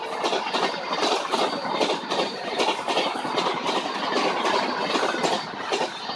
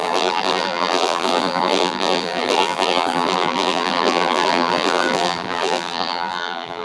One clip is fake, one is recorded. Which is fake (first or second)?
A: second